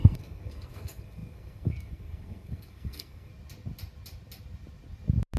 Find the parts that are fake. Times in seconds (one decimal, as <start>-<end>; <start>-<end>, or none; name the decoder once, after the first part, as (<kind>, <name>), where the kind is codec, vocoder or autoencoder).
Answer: 0.0-3.3 (codec, SNAC)